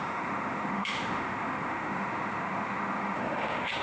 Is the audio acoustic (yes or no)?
no